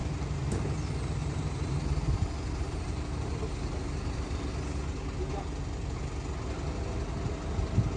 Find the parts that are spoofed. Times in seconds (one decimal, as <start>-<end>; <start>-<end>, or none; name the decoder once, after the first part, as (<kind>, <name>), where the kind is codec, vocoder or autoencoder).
0.0-0.6 (vocoder, BigVGAN v2); 1.2-4.5